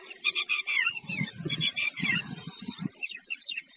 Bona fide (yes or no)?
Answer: no